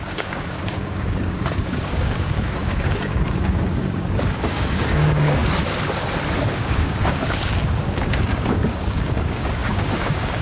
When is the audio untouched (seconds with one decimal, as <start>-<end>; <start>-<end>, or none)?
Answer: 5.4-6.5